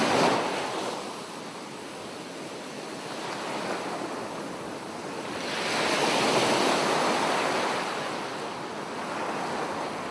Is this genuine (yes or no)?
yes